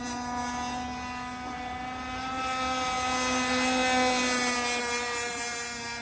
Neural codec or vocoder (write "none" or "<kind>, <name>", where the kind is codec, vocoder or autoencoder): none